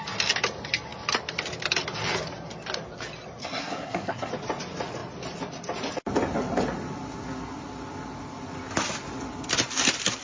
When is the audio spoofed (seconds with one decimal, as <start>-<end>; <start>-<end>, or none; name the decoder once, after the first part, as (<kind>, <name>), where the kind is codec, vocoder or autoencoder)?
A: 3.4-4.3 (codec, SNAC)